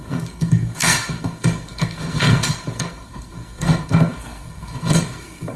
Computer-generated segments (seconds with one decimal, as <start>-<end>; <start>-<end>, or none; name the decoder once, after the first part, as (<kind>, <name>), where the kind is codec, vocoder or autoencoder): 0.0-5.6 (codec, SNAC)